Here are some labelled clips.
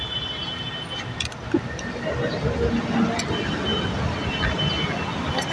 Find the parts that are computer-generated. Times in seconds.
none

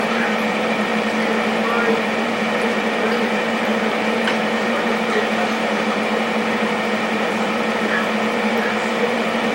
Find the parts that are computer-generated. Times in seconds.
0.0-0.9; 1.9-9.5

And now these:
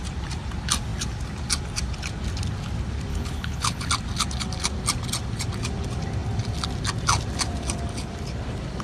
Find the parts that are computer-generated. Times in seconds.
3.1-3.9

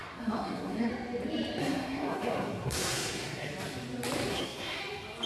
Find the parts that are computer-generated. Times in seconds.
0.0-0.9; 1.6-3.5; 4.3-4.8